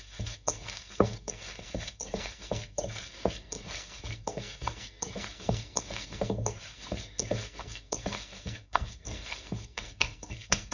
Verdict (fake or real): fake